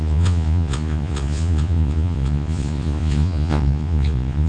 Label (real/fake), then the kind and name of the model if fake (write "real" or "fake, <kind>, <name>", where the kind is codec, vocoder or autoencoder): fake, vocoder, Vocos